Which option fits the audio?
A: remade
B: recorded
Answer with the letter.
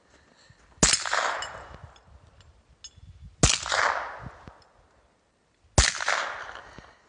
B